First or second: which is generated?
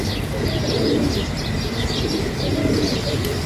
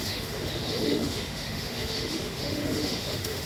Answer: second